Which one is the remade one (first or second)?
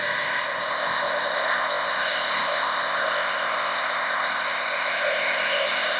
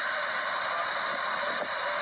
first